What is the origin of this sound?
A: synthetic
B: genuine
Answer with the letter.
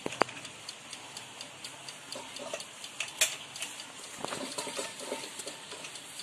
B